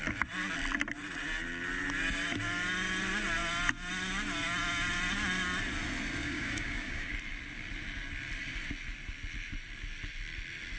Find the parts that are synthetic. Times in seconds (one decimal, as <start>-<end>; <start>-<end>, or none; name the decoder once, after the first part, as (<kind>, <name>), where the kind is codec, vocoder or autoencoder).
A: 6.2-7.1 (codec, DAC)